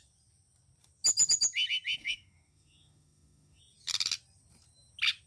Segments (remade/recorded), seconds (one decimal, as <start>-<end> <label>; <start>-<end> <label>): 0.0-2.0 recorded; 2.0-3.6 remade; 3.6-5.3 recorded